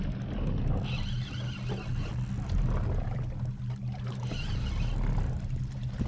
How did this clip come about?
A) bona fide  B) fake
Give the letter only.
A